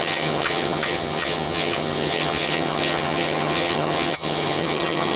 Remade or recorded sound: remade